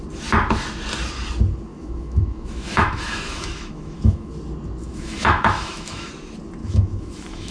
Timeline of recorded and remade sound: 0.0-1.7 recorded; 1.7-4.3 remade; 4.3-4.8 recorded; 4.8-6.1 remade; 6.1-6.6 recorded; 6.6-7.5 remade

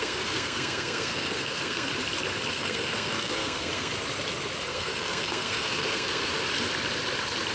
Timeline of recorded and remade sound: 0.0-1.9 remade; 1.9-2.5 recorded; 2.5-3.9 remade; 3.9-4.7 recorded; 4.7-6.3 remade; 6.3-7.5 recorded

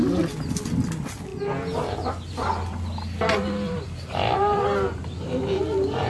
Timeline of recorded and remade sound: 0.0-6.1 recorded